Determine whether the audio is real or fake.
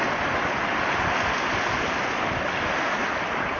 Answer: real